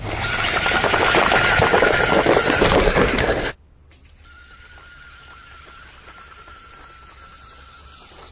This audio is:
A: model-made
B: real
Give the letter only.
B